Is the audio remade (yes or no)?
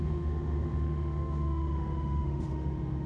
yes